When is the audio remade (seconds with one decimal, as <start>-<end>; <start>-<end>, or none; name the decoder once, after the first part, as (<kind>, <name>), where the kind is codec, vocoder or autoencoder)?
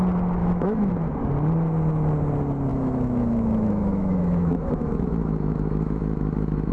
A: 0.4-0.9 (autoencoder, DAC-VAE); 2.7-6.7